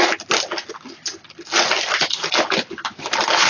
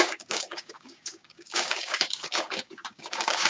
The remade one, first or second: second